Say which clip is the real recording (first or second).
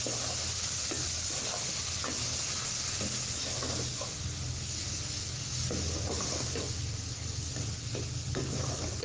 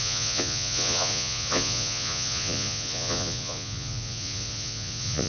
first